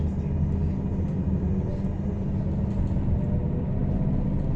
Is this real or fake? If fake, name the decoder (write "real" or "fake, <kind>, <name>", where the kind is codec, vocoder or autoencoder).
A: real